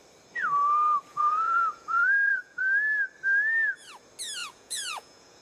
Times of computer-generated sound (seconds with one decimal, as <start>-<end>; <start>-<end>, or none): 1.1-2.6; 4.4-5.4